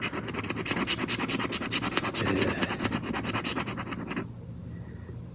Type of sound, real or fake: real